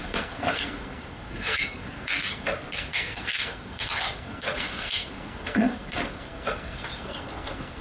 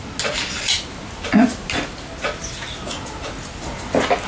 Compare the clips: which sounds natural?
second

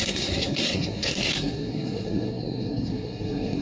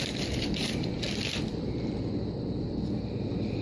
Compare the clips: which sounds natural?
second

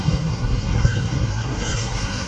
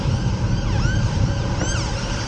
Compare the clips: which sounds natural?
second